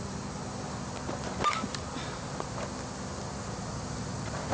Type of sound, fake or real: real